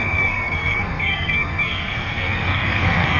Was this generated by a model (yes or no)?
yes